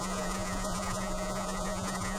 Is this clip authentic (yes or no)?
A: no